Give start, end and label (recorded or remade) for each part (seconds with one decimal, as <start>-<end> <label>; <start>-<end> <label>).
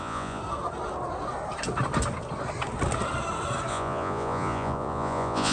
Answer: 0.0-0.4 remade; 0.4-3.7 recorded; 3.7-5.5 remade